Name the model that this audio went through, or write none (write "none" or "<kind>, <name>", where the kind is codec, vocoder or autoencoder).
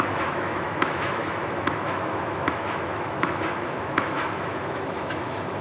autoencoder, DAC-VAE